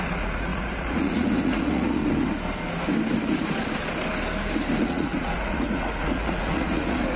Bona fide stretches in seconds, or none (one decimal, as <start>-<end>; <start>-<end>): 2.0-4.8